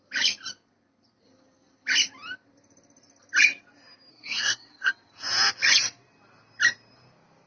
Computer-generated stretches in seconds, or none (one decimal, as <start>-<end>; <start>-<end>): 4.1-4.9